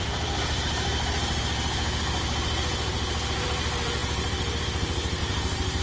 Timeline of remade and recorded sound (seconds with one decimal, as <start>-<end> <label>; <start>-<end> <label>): 0.0-0.9 remade; 0.9-3.4 recorded; 3.4-5.8 remade

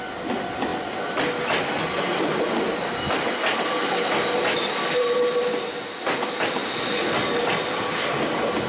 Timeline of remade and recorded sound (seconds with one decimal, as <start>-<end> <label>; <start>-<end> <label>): 0.0-8.7 recorded

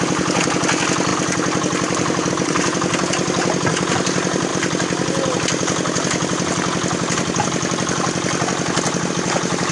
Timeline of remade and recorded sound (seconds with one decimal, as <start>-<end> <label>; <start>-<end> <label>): 0.0-9.7 recorded

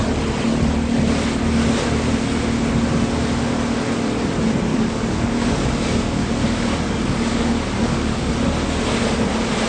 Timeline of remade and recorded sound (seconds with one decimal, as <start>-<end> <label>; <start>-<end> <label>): 0.0-4.7 recorded; 4.7-8.3 remade; 8.3-9.7 recorded

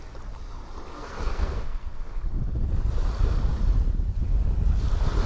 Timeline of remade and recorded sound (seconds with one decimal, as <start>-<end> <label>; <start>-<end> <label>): 0.0-0.9 recorded; 0.9-2.2 remade; 2.2-5.3 recorded

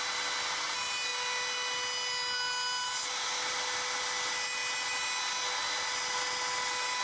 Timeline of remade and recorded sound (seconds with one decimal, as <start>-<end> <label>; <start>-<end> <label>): 0.0-7.0 recorded